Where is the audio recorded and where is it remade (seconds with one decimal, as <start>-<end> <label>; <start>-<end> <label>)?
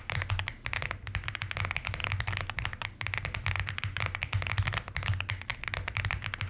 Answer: 0.0-6.5 recorded